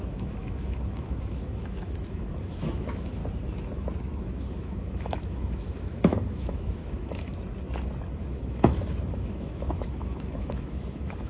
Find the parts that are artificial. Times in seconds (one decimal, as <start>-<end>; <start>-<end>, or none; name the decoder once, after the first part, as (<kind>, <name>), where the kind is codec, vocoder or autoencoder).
0.0-3.2 (autoencoder, DAC-VAE); 4.2-7.3; 8.2-11.3